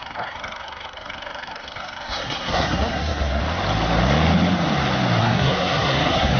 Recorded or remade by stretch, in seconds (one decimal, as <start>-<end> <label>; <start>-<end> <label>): 0.0-3.4 remade; 3.4-5.2 recorded; 5.2-6.4 remade